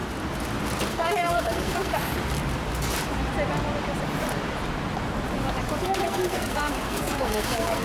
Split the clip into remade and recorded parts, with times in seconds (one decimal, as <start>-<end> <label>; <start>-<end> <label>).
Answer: 0.0-0.9 recorded; 0.9-1.9 remade; 1.9-5.8 recorded; 5.8-7.8 remade